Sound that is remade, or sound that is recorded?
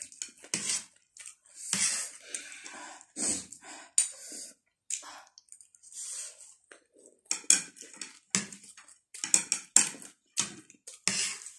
recorded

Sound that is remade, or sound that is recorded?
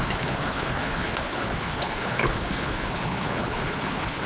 remade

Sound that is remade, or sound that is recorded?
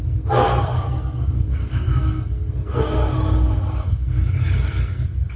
remade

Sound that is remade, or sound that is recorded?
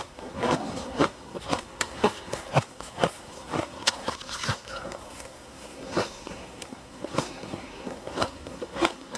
remade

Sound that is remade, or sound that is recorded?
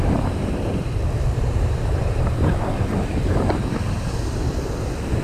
remade